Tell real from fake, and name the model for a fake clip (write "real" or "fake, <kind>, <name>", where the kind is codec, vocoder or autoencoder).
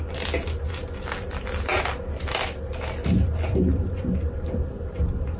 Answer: real